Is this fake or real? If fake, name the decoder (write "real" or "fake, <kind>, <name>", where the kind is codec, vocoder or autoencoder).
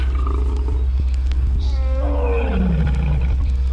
real